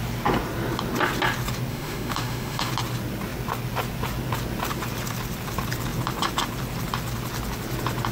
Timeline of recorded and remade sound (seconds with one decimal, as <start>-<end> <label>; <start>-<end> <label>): 0.0-1.7 recorded; 1.7-2.7 remade; 2.7-8.1 recorded